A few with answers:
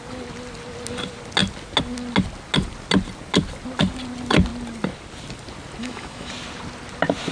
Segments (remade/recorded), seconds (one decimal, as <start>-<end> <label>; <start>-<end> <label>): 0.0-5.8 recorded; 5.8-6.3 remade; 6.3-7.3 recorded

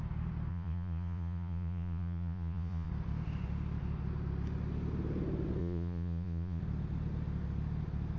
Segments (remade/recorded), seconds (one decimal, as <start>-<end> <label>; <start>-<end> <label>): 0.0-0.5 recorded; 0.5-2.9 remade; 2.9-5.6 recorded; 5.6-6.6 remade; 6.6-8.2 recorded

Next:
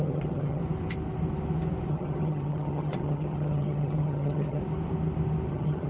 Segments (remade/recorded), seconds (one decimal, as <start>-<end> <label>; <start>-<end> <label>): 0.0-0.6 remade; 0.6-1.9 recorded; 1.9-4.6 remade; 4.6-5.5 recorded; 5.5-5.9 remade

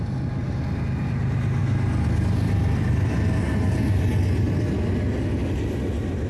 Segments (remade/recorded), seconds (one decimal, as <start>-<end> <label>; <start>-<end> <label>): 0.0-6.3 recorded